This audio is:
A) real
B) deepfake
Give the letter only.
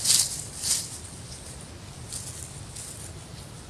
A